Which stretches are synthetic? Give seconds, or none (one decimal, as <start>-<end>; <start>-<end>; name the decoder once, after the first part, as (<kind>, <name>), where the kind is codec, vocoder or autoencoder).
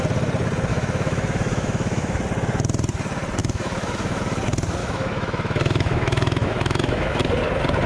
0.7-2.2 (autoencoder, DAC-VAE); 3.4-4.2; 4.8-7.2